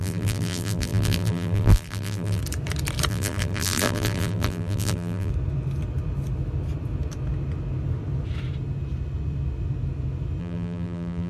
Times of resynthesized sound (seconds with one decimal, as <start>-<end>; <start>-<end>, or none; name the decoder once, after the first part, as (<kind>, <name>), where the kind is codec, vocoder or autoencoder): 0.0-2.4 (vocoder, BigVGAN v2); 3.1-5.3; 10.4-11.3